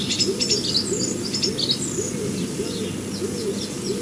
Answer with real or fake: real